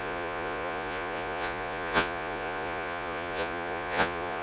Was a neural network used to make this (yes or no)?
yes